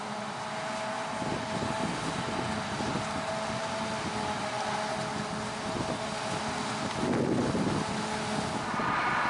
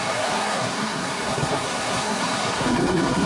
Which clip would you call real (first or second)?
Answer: first